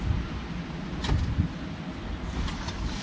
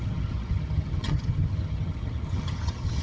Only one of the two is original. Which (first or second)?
first